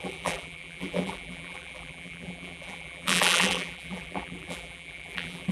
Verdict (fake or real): fake